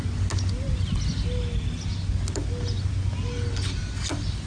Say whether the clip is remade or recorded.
recorded